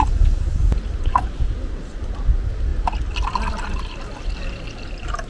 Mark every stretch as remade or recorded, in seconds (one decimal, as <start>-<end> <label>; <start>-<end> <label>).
0.0-5.3 recorded